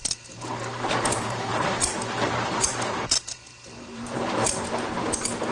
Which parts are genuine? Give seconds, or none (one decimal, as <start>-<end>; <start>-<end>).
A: none